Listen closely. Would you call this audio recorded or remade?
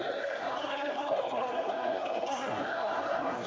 remade